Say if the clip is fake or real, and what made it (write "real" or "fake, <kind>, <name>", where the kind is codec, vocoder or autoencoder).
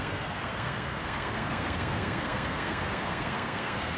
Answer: fake, codec, SNAC